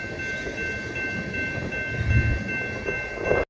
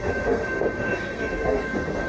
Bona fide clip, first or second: first